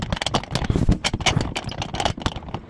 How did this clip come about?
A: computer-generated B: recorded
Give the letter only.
B